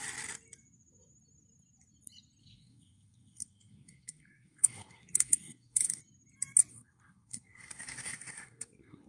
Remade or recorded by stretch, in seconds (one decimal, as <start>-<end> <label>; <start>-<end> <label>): 0.0-2.4 recorded; 2.4-6.0 remade; 6.0-6.7 recorded; 6.7-9.1 remade